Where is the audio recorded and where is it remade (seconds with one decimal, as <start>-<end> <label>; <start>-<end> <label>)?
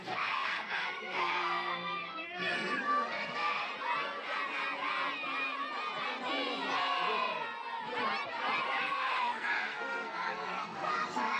0.0-3.7 remade; 3.7-8.8 recorded; 8.8-11.4 remade